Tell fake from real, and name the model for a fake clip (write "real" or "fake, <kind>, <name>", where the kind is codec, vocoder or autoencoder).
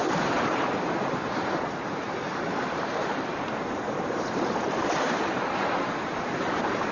fake, vocoder, BigVGAN v2